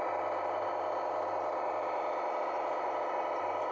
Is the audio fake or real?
fake